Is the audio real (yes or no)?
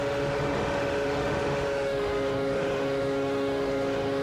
no